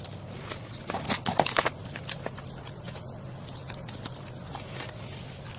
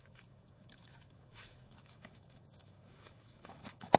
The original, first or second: first